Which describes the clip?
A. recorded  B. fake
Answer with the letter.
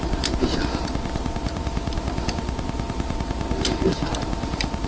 B